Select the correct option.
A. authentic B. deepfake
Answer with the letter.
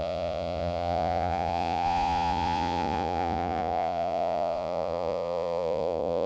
B